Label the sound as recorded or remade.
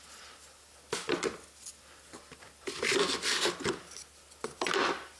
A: recorded